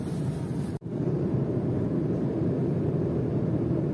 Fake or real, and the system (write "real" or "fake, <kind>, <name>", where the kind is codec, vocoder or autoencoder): fake, vocoder, BigVGAN v2